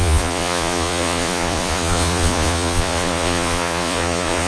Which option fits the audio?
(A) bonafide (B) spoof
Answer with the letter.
B